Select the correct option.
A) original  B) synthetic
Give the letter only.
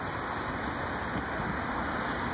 A